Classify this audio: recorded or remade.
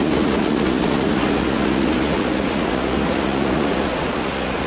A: remade